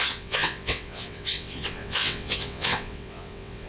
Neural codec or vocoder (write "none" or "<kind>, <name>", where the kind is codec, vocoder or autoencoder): vocoder, WaveNeXt